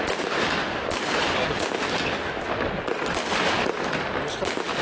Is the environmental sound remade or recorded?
recorded